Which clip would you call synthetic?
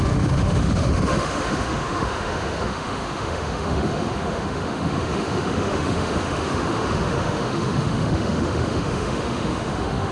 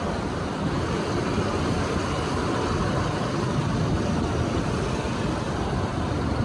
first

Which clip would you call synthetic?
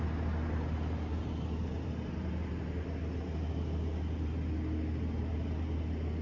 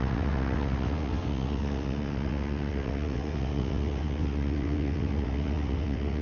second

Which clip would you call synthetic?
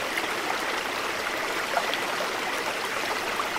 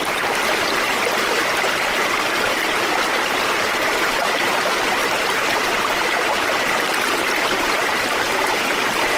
second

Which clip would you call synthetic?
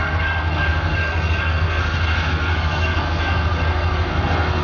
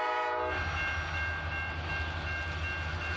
first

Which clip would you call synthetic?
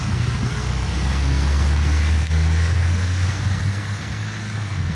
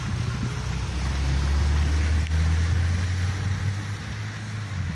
first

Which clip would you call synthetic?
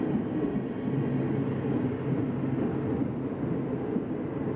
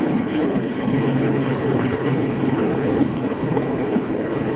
second